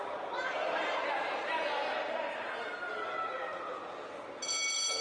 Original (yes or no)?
yes